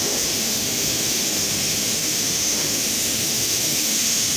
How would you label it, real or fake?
fake